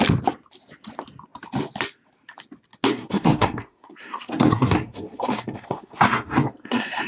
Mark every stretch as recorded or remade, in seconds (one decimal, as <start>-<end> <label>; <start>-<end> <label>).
0.0-2.9 recorded; 2.9-7.1 remade